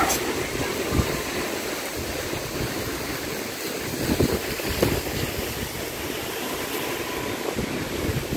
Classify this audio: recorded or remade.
recorded